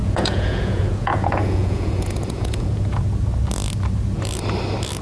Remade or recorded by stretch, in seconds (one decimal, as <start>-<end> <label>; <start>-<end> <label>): 0.0-3.0 remade; 3.0-5.0 recorded